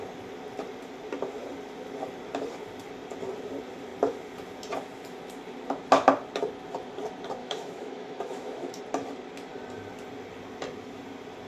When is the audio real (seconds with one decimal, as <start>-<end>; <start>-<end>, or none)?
0.0-7.4; 8.8-11.5